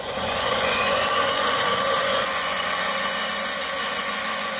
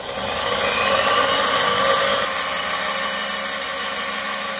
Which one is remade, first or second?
first